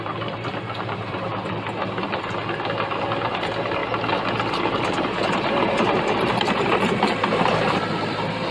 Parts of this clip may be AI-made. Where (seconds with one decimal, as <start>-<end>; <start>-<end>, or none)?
0.0-1.3; 3.3-3.8; 4.5-8.5